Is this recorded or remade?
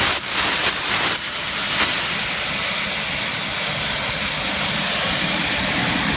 recorded